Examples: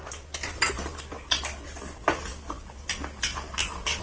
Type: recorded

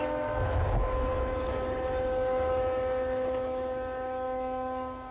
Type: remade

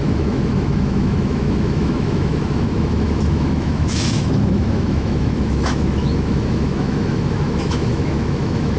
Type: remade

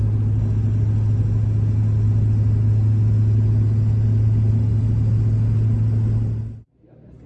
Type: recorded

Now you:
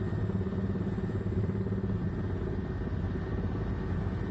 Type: recorded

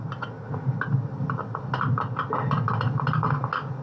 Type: recorded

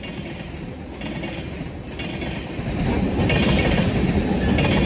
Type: recorded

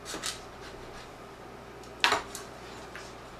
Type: recorded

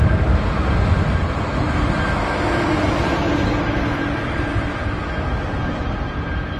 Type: recorded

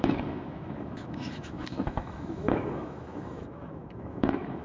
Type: remade